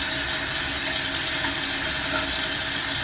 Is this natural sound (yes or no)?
yes